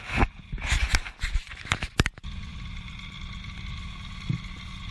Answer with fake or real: real